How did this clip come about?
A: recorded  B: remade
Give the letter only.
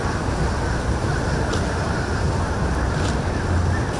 B